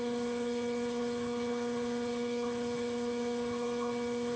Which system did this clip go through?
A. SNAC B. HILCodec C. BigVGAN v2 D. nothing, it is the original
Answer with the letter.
B